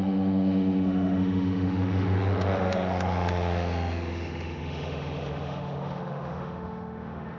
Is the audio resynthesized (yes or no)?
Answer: yes